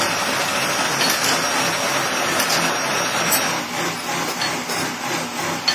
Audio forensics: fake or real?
real